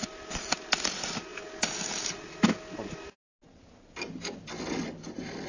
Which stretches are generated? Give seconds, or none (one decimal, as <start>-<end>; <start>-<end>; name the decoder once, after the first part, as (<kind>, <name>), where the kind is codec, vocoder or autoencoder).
none